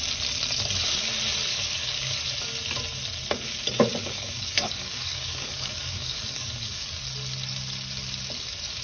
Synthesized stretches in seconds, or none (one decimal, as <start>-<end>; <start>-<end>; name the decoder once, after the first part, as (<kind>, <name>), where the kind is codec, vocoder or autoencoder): 1.5-2.2 (codec, DAC); 4.0-6.9

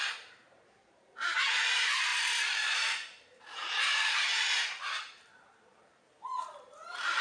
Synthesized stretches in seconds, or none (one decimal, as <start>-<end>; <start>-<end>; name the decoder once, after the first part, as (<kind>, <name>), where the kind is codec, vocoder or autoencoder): 0.0-7.2 (vocoder, BigVGAN v2)